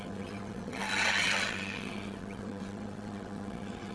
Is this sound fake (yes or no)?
yes